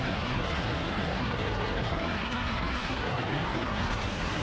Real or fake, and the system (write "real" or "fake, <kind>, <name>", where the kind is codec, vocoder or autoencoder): fake, codec, SNAC